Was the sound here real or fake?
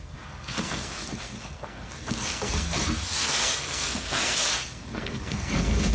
fake